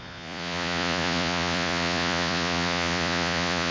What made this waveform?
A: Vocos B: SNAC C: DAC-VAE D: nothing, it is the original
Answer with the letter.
A